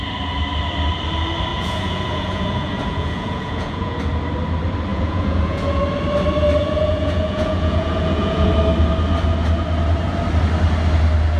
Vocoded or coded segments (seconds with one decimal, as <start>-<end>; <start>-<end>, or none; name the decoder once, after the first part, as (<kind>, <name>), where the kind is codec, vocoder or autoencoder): 1.5-4.0 (vocoder, Vocos); 4.9-5.8; 6.6-8.5